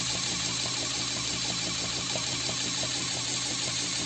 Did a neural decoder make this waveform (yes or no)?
no